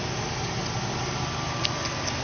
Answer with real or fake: real